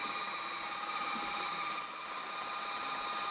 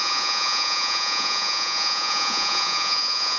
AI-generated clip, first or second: second